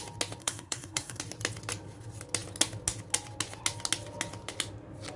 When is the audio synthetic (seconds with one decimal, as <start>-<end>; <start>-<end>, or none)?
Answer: 0.4-1.2